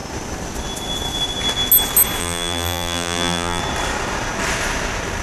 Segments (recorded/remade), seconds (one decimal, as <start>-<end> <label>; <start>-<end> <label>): 0.0-2.2 recorded; 2.2-3.6 remade; 3.6-5.2 recorded